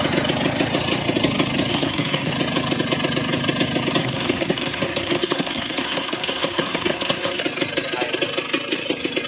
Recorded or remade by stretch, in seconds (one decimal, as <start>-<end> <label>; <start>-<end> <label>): 0.0-1.7 recorded; 1.7-2.3 remade; 2.3-4.0 recorded; 4.0-7.4 remade; 7.4-9.3 recorded